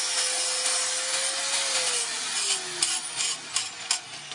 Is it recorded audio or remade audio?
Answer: recorded